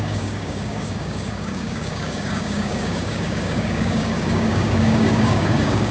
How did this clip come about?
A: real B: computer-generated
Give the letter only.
B